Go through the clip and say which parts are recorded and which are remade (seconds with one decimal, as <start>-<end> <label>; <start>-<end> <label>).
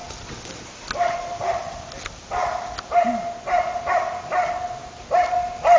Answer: 0.0-5.8 recorded